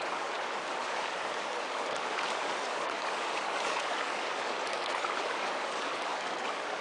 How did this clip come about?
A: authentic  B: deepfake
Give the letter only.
B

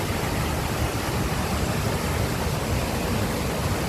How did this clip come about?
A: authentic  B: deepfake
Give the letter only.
A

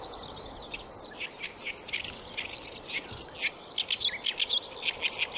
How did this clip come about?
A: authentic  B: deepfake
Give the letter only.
A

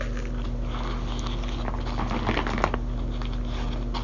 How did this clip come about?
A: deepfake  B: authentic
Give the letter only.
B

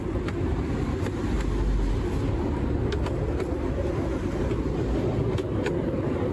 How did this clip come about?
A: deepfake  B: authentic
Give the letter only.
B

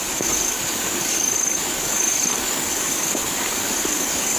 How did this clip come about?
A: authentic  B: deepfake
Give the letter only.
B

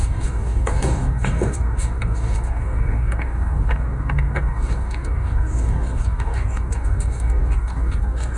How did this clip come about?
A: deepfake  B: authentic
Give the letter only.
A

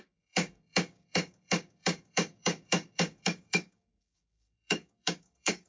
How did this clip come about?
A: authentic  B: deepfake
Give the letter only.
B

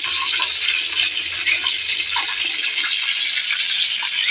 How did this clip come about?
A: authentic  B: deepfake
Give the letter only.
A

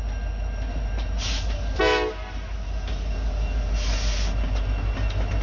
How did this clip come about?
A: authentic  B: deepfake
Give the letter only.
A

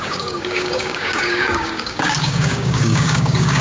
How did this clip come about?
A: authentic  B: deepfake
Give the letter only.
B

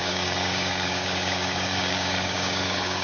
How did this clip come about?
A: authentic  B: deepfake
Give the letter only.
B